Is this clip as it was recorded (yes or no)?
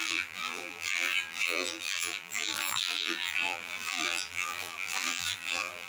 no